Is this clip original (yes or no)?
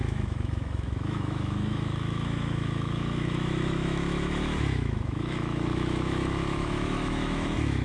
no